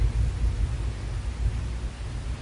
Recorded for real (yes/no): yes